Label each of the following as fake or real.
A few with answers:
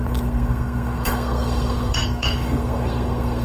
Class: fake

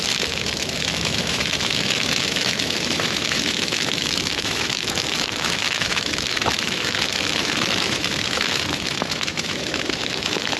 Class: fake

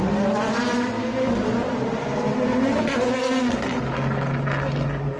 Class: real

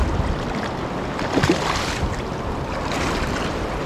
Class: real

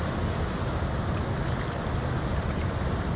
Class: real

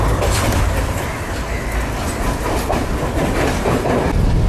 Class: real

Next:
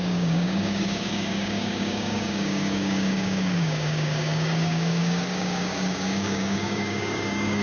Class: fake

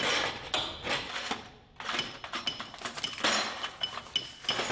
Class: real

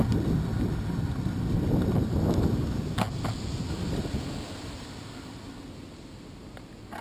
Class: real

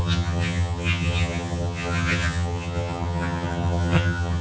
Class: fake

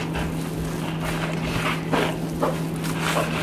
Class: real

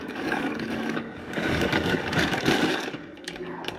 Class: fake